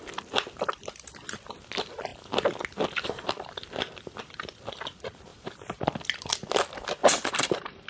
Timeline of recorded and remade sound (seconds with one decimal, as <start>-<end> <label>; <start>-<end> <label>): 0.0-5.3 recorded; 5.3-5.8 remade; 5.8-7.0 recorded; 7.0-7.9 remade